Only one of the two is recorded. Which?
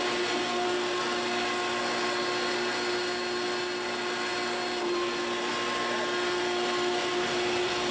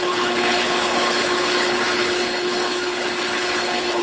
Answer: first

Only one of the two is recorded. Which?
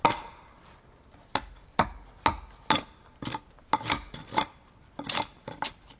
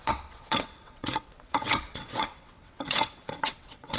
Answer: first